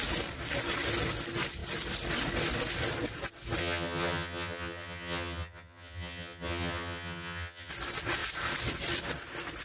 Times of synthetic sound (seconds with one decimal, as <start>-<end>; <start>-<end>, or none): 3.6-7.7